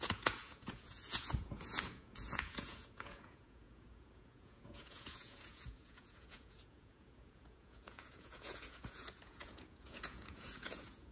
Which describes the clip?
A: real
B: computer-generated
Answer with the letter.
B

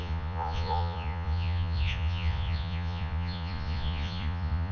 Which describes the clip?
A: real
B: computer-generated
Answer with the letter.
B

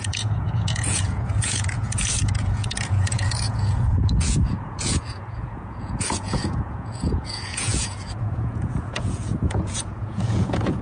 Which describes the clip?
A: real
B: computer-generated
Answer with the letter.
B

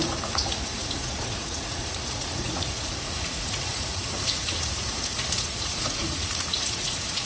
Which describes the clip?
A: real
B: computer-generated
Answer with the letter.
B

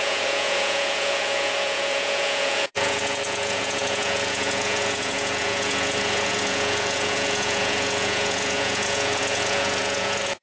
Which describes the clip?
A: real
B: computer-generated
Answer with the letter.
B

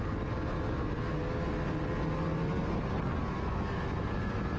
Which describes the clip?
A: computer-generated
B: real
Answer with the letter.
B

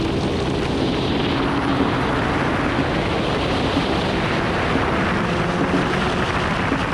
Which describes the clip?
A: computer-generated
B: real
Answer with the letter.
B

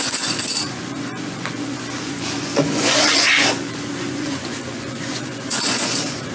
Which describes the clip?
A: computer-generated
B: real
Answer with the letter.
A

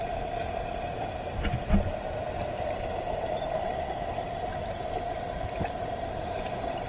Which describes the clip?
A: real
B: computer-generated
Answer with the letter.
A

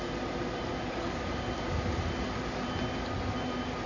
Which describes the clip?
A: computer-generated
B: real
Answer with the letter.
B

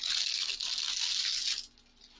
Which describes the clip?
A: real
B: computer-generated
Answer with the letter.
A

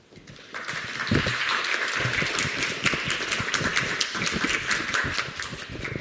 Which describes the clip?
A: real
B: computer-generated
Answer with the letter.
A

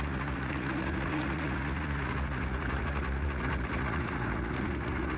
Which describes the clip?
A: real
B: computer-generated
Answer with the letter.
B